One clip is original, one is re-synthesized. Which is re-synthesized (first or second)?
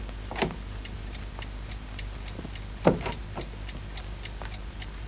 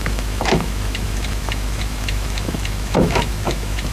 second